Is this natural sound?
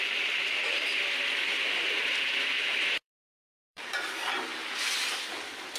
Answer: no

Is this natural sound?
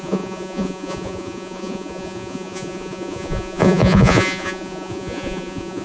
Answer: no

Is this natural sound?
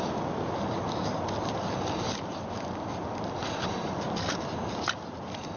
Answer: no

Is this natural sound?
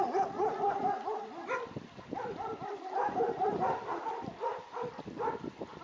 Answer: yes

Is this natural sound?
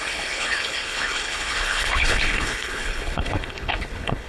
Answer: no